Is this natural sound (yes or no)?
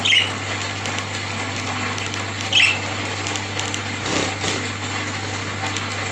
yes